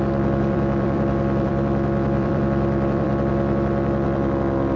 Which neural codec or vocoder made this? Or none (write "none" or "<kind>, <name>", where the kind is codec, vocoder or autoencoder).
vocoder, BigVGAN v2